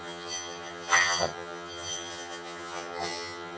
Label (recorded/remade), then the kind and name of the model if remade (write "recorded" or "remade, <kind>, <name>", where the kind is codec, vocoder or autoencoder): remade, vocoder, HiFi-GAN